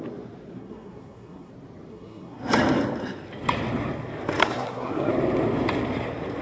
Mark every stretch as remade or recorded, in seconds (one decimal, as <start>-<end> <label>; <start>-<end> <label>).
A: 0.0-0.5 recorded; 0.5-1.5 remade; 1.5-1.9 recorded; 1.9-2.4 remade; 2.4-4.4 recorded; 4.4-5.1 remade; 5.1-6.4 recorded